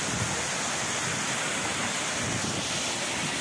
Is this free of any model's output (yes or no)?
yes